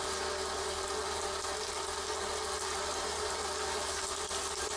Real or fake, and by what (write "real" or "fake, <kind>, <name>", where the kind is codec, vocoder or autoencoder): real